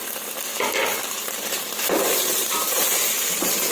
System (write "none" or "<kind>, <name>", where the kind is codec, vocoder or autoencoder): vocoder, BigVGAN v2